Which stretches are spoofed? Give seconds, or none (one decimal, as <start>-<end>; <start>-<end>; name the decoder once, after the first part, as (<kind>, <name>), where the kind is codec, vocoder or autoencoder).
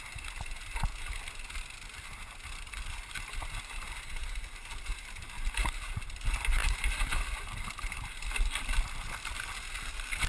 none